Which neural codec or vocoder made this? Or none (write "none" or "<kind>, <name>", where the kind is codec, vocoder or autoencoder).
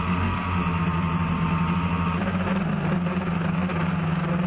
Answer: none